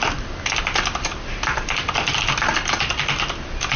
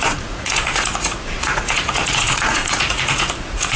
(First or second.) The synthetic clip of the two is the second